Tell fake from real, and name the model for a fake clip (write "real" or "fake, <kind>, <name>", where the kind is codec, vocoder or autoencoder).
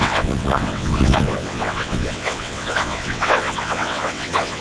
fake, vocoder, WaveNeXt